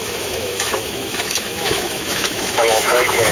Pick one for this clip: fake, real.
fake